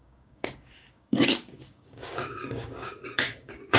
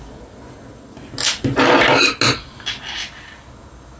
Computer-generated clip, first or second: first